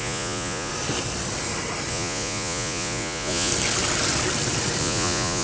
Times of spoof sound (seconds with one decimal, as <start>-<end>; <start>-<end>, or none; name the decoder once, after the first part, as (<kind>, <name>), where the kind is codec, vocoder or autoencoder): 0.0-0.7 (vocoder, Vocos); 1.9-3.5; 4.8-5.4